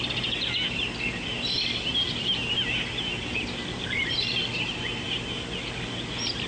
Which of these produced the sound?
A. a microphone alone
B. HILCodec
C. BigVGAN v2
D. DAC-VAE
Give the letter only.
A